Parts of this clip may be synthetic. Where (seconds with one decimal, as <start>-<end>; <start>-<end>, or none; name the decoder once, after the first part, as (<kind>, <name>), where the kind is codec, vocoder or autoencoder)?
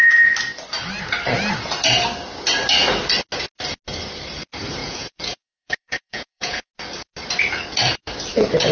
4.8-6.7 (vocoder, Vocos)